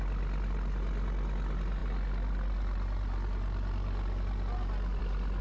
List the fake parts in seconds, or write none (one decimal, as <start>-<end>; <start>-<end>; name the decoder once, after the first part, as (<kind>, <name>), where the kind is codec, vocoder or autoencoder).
none